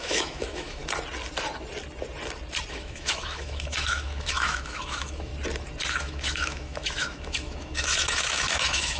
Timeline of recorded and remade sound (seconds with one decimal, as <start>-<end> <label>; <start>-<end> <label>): 0.0-0.8 remade; 0.8-2.7 recorded; 2.7-5.3 remade; 5.3-5.9 recorded; 5.9-9.0 remade